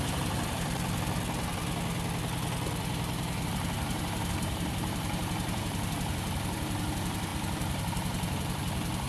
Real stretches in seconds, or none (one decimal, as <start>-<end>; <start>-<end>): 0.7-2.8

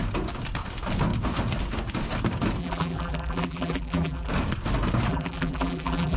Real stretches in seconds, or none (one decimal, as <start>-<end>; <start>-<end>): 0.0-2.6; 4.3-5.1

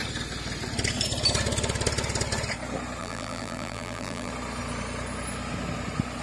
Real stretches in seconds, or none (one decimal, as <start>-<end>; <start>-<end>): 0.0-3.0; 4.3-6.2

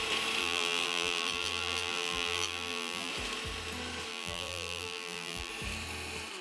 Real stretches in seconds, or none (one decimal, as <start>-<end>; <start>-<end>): 0.0-0.4; 3.1-4.1; 5.5-6.4